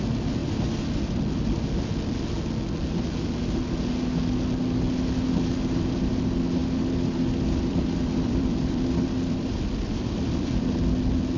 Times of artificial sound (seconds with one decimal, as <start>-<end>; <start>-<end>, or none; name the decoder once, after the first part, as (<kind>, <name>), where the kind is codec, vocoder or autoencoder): 0.4-1.2 (vocoder, BigVGAN v2); 6.6-10.5